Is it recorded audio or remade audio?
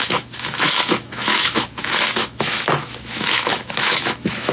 remade